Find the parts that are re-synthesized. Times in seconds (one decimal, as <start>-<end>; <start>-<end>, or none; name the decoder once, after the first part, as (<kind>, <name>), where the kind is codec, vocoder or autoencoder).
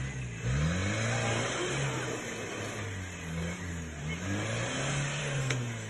5.2-5.9 (codec, SNAC)